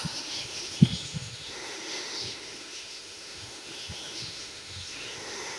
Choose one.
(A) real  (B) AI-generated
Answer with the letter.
B